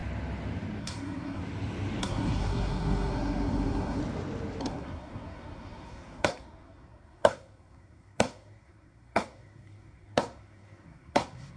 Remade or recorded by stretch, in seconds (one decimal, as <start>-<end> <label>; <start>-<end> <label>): 0.0-0.8 recorded; 0.8-1.4 remade; 1.4-2.0 recorded; 2.0-4.0 remade; 4.0-4.6 recorded; 4.6-11.6 remade

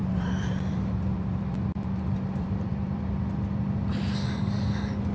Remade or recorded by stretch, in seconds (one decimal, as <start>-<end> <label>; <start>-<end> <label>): 0.0-3.1 remade; 3.1-5.1 recorded

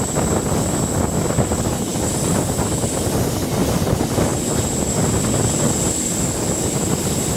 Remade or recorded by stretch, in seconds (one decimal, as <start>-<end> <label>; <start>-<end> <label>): 0.0-4.3 recorded; 4.3-7.4 remade